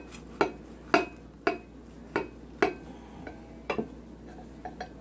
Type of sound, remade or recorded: recorded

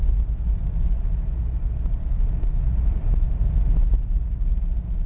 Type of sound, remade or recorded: recorded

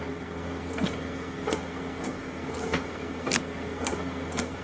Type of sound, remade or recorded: remade